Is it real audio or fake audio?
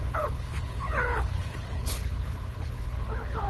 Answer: fake